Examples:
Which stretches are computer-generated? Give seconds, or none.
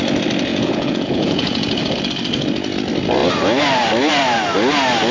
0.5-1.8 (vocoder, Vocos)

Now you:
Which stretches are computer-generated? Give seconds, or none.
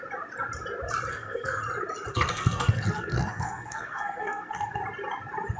1.1-1.6 (codec, SNAC); 2.1-4.8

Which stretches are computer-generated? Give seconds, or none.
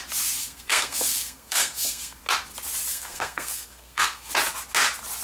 0.4-2.2 (codec, SNAC); 2.9-4.3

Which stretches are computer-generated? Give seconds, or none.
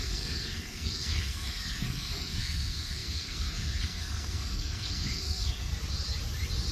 0.0-5.7 (codec, SNAC)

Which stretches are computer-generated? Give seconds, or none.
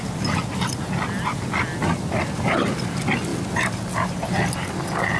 none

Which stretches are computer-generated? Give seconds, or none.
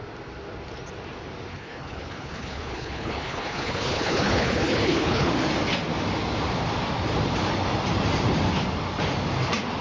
1.5-5.3 (codec, HILCodec)